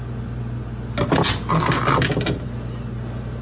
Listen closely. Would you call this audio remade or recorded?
recorded